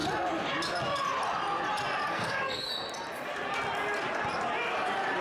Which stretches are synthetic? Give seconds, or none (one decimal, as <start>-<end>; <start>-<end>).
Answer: 2.1-2.7